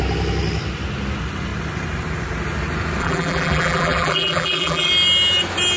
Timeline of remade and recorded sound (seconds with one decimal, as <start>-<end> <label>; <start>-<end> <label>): 0.0-3.0 recorded; 3.0-4.9 remade; 4.9-5.8 recorded